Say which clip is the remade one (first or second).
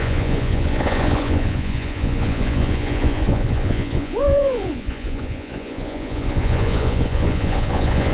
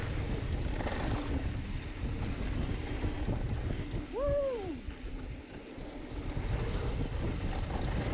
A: first